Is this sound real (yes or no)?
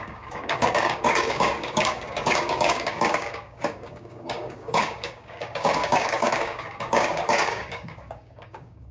no